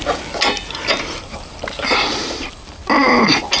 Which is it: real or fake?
real